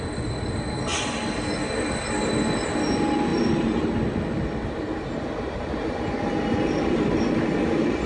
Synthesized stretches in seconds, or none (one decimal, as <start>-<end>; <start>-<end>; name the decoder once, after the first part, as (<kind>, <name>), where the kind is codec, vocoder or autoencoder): none